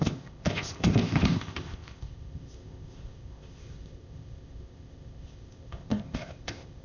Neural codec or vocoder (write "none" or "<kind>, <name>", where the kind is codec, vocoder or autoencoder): codec, ZipCodec